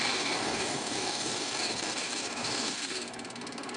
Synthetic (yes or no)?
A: yes